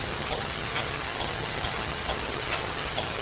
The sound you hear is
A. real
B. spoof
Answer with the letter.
B